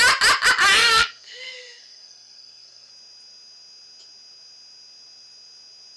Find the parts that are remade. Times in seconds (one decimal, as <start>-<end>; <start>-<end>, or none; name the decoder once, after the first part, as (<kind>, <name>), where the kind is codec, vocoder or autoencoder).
0.8-2.9 (codec, SNAC)

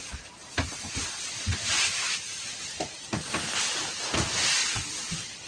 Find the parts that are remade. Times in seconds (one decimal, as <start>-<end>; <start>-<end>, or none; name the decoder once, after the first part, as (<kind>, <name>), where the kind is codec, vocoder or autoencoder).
4.6-5.1 (vocoder, Vocos)

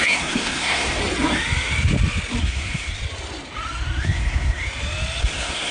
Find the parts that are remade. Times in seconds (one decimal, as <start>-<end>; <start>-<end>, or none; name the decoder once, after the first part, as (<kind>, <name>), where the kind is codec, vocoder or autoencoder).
0.0-1.0 (codec, SNAC); 2.4-3.0; 4.0-4.6; 5.2-5.7

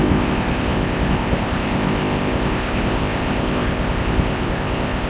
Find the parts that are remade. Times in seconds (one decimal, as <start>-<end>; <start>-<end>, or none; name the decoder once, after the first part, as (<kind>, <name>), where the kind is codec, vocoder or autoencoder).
0.0-5.1 (codec, ZipCodec)

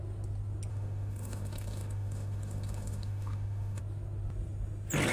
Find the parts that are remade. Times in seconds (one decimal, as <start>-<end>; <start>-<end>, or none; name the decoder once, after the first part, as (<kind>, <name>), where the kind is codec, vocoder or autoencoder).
0.7-3.8 (autoencoder, DAC-VAE)

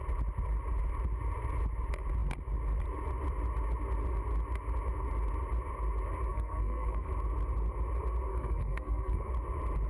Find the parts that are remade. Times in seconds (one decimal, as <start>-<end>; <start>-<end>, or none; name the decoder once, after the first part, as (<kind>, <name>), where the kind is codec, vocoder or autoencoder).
6.3-7.1 (codec, SNAC); 8.3-9.3